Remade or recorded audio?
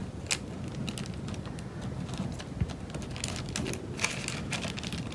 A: recorded